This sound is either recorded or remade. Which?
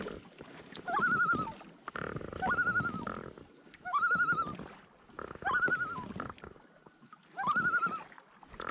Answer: recorded